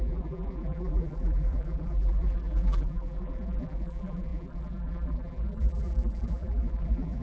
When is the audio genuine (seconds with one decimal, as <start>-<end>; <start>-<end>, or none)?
none